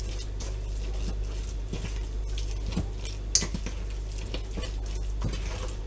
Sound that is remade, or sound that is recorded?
recorded